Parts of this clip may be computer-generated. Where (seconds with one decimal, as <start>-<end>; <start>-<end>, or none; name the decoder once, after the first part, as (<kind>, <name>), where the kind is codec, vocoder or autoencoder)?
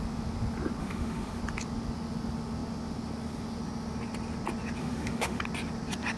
0.8-1.4 (autoencoder, DAC-VAE); 4.8-5.4